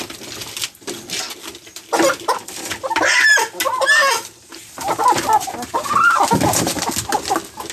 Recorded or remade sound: recorded